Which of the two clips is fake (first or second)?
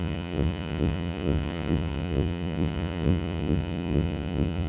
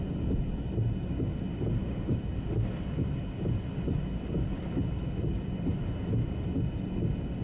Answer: first